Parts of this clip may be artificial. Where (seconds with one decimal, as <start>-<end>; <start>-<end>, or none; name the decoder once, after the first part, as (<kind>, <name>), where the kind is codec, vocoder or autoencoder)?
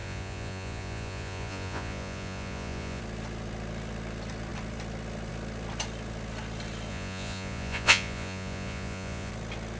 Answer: 0.0-3.0 (vocoder, Vocos); 6.9-9.3